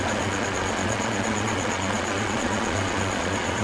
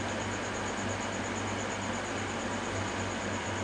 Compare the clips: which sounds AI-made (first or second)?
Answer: first